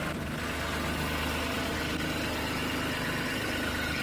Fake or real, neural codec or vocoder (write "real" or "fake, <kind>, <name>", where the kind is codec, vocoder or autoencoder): real